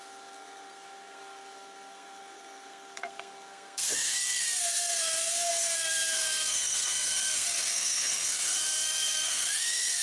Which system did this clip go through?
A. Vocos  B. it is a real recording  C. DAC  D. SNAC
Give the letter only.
D